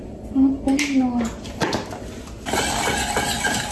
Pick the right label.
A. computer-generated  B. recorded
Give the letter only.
B